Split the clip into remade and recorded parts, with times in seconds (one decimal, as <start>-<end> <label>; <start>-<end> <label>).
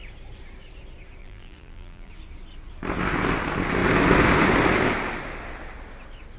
0.0-1.2 recorded; 1.2-2.1 remade; 2.1-6.4 recorded